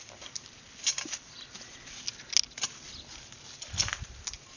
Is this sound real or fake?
real